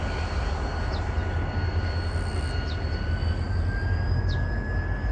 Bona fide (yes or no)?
yes